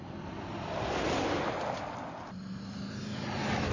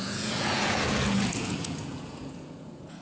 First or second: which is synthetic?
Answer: second